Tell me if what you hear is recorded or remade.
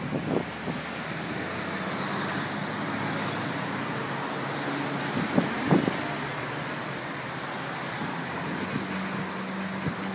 recorded